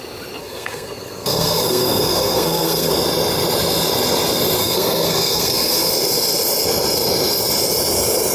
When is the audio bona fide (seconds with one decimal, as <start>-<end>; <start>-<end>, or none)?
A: 0.0-0.4; 2.9-4.6; 5.9-8.3